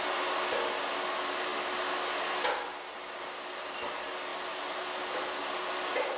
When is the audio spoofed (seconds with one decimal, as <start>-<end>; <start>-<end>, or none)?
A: none